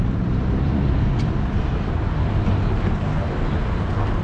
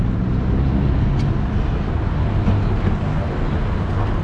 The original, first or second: second